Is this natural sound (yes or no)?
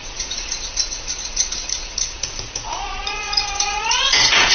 no